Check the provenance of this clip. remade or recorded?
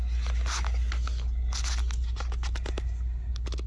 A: recorded